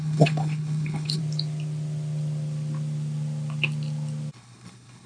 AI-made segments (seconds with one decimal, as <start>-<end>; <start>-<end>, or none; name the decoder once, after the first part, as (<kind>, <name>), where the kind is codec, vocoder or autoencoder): 0.0-1.2 (codec, HILCodec); 4.3-5.1